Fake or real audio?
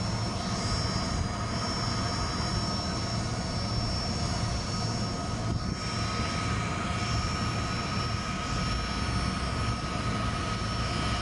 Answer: real